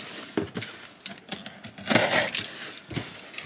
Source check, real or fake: real